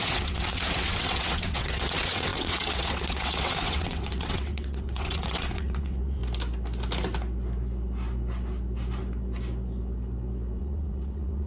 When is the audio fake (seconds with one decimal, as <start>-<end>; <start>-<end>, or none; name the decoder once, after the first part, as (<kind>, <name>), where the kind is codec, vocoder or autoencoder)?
0.0-6.2 (vocoder, WaveNeXt); 10.6-11.5